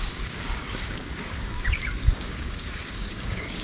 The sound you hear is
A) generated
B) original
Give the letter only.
A